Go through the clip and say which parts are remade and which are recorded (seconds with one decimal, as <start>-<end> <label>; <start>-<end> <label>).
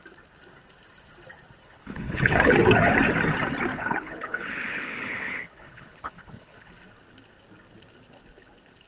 0.0-1.6 recorded; 1.6-2.5 remade; 2.5-3.7 recorded; 3.7-6.7 remade; 6.7-8.9 recorded